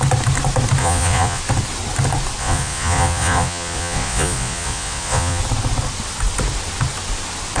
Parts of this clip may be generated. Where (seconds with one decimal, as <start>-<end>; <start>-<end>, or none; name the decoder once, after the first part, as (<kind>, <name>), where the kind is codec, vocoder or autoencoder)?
0.8-1.4 (vocoder, Vocos); 2.4-5.4